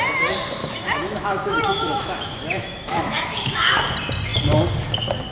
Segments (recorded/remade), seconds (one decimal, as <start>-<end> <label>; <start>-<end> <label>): 0.0-0.6 recorded; 0.6-3.8 remade; 3.8-5.3 recorded